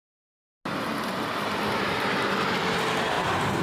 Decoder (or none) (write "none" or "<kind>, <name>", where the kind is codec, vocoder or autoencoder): none